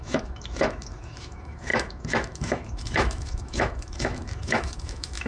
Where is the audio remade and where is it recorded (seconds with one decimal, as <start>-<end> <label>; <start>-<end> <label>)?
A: 0.0-5.3 remade